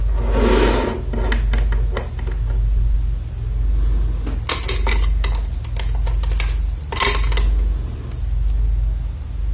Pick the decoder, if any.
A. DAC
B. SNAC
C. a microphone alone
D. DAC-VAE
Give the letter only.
C